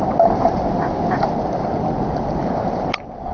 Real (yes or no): yes